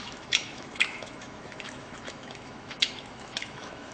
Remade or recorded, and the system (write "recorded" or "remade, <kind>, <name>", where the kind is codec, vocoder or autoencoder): remade, autoencoder, DAC-VAE